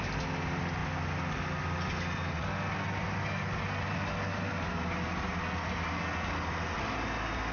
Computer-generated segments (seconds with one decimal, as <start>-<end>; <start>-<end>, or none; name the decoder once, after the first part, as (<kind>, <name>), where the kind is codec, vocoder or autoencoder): none

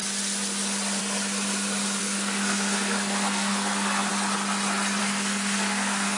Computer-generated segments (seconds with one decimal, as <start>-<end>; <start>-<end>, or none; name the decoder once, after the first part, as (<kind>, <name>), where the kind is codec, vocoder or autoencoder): 2.0-4.1 (codec, SNAC); 5.0-6.2

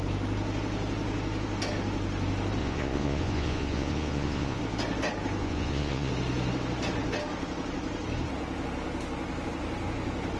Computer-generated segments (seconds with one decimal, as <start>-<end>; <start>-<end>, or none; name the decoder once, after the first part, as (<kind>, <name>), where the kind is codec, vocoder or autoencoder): 2.6-4.6 (vocoder, Vocos); 5.4-6.1

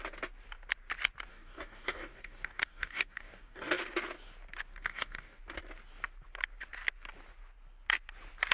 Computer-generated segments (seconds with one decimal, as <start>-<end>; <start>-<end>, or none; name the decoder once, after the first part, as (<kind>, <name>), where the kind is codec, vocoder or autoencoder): 1.3-3.8 (codec, DAC); 4.7-5.4

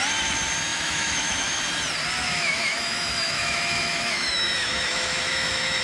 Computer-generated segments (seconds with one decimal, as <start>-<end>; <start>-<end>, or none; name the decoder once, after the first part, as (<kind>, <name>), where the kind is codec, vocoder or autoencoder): 0.7-1.6 (autoencoder, DAC-VAE); 2.2-5.8

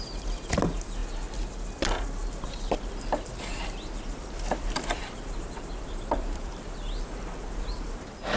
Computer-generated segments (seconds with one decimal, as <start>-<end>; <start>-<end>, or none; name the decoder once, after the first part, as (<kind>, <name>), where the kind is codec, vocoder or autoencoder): 2.2-6.6 (vocoder, BigVGAN v2)